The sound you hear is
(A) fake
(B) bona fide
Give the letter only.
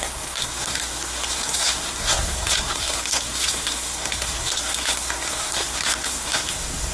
A